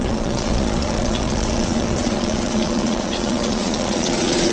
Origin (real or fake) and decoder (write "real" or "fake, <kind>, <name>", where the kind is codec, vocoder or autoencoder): fake, vocoder, Vocos